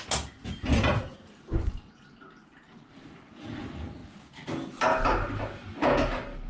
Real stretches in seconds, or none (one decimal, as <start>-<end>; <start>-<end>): 0.0-6.5